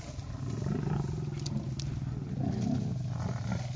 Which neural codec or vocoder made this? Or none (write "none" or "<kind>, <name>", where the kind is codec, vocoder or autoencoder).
none